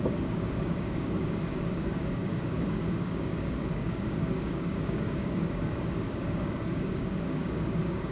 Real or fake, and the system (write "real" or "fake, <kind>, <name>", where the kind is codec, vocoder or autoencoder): fake, codec, DAC